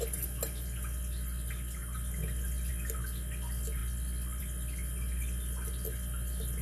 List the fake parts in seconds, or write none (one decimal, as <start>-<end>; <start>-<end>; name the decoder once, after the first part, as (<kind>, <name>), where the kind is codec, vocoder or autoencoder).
none